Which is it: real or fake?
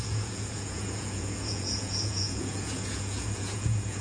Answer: fake